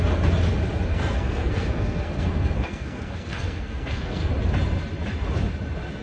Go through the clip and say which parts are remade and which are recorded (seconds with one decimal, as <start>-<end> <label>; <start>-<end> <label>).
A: 0.0-0.9 recorded; 0.9-4.3 remade; 4.3-6.0 recorded